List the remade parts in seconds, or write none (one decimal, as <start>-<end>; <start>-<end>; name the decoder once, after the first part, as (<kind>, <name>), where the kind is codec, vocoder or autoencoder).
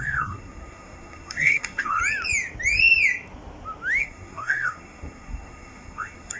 0.0-2.0 (codec, SNAC); 4.0-6.4